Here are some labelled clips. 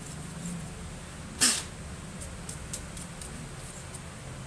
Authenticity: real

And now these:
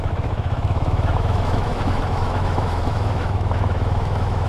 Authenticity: fake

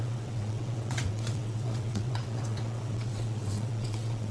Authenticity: fake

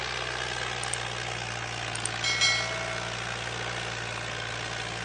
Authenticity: real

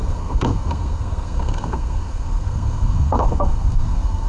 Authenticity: fake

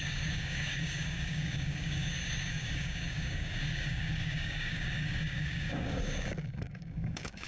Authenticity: fake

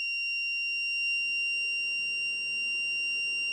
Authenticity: real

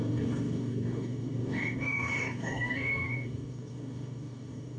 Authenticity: fake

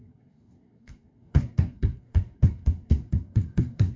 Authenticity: fake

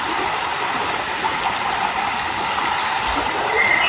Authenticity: real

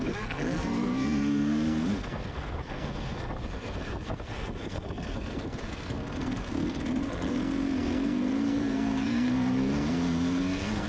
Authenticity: fake